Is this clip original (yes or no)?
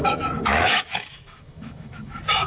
no